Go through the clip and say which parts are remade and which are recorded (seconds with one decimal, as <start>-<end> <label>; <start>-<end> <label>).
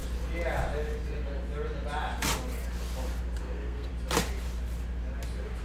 0.0-3.4 recorded; 3.4-3.9 remade; 3.9-5.6 recorded